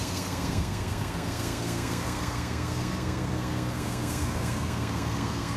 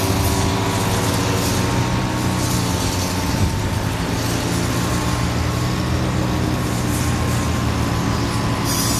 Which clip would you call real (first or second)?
second